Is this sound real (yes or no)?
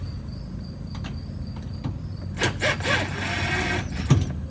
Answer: yes